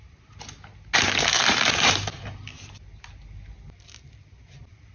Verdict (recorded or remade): recorded